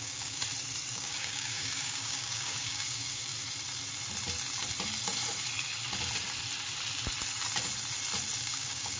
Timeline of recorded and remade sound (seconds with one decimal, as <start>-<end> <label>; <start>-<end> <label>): 0.0-0.4 remade; 0.4-0.9 recorded; 0.9-3.3 remade; 3.3-8.4 recorded; 8.4-9.0 remade